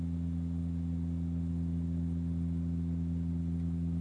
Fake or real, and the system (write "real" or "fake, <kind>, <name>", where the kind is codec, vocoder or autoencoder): real